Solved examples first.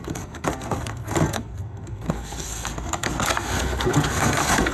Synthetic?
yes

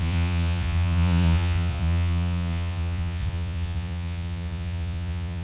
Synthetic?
yes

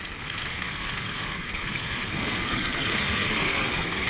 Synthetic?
yes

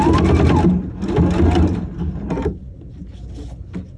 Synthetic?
no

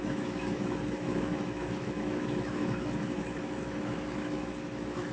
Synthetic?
yes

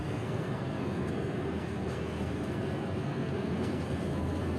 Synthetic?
yes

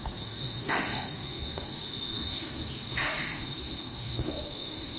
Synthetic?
yes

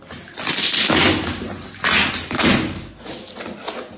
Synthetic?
no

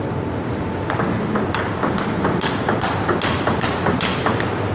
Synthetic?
no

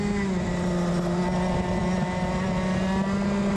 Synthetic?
no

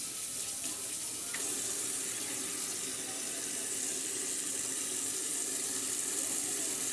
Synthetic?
no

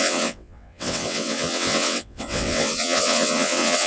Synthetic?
yes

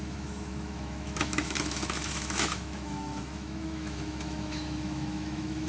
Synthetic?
yes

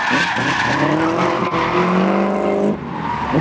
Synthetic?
no